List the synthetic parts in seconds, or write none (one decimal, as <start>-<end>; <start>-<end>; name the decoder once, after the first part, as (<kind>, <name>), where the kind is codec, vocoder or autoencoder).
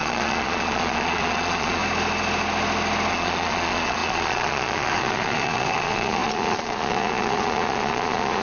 0.0-1.8 (vocoder, Vocos); 3.1-8.4